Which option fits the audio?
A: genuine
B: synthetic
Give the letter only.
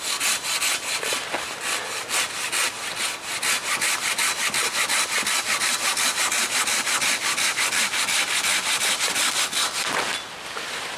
A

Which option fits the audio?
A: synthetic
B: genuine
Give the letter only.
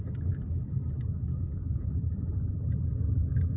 B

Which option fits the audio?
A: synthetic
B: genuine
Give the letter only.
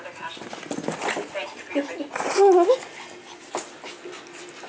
B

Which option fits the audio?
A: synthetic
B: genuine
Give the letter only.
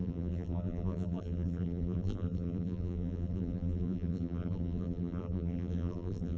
A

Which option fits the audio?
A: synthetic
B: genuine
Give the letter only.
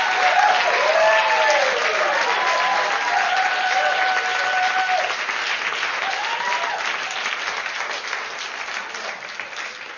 B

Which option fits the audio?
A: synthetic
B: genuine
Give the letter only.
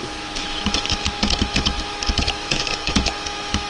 A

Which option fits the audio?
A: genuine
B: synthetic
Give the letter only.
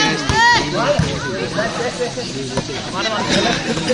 A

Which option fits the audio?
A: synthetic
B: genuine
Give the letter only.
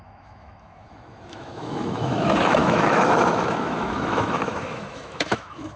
A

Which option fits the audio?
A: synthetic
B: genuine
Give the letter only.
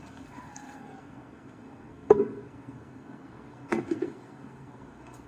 A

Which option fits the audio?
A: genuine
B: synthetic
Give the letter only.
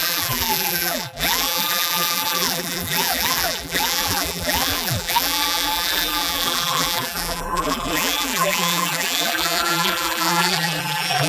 B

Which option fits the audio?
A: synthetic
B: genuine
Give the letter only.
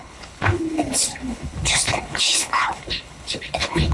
A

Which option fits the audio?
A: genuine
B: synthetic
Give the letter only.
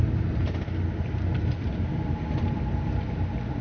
B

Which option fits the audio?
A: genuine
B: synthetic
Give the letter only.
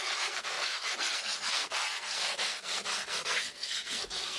B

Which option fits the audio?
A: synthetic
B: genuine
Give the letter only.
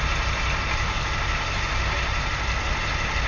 B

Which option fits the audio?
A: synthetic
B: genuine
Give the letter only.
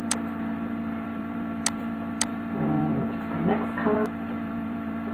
A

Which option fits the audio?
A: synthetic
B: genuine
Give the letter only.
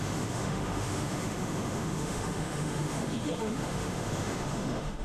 A